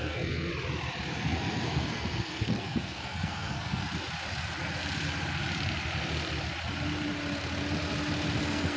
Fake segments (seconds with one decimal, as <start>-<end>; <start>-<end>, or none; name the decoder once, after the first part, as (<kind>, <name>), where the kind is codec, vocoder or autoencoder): 0.0-0.5 (codec, SNAC); 1.2-3.8; 8.4-8.8